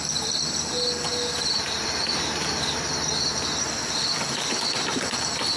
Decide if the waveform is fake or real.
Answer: real